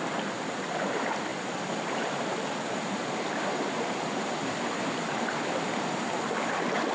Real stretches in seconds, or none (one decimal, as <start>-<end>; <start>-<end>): 0.0-1.3; 4.3-6.9